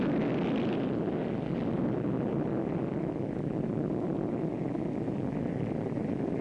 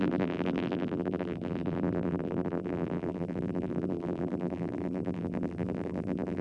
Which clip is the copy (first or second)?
second